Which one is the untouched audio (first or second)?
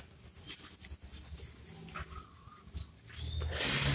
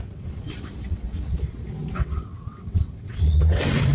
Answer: first